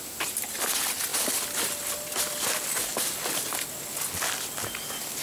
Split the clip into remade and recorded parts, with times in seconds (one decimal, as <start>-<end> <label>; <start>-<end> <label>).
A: 0.0-5.2 recorded